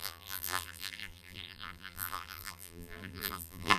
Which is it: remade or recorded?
remade